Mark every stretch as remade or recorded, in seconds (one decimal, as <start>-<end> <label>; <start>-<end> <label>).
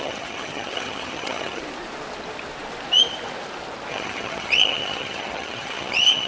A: 0.0-1.6 remade; 1.6-3.9 recorded; 3.9-6.3 remade